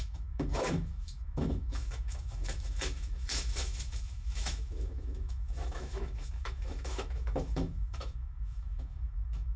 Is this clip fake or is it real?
fake